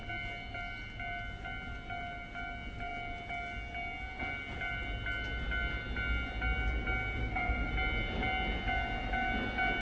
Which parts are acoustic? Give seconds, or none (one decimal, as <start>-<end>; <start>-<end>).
0.0-7.2; 7.7-9.8